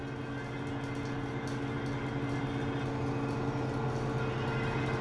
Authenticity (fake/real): real